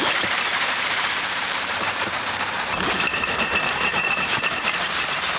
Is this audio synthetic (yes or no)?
yes